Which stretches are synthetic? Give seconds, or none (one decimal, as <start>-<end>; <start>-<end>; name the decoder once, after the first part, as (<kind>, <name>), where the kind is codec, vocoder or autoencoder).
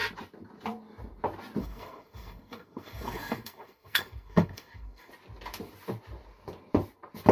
1.6-5.1 (codec, SNAC)